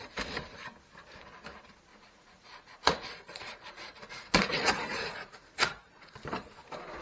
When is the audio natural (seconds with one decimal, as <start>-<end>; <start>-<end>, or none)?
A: 0.0-1.9; 6.1-7.0